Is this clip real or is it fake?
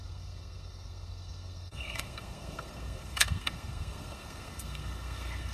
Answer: fake